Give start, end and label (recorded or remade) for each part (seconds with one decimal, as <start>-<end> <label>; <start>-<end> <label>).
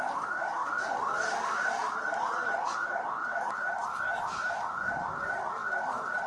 0.0-6.3 recorded